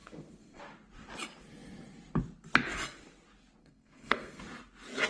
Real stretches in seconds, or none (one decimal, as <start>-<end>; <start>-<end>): 0.6-3.6; 4.4-5.1